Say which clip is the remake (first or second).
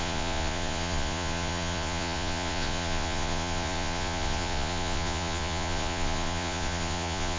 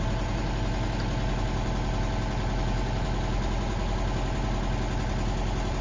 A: first